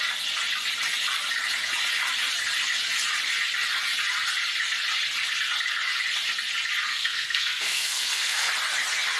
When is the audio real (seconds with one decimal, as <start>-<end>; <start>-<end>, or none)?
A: 0.0-6.9; 8.5-9.2